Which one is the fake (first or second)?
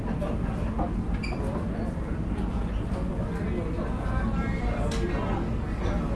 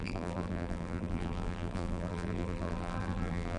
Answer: second